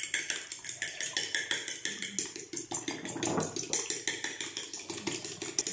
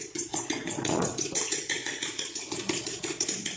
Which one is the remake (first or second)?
second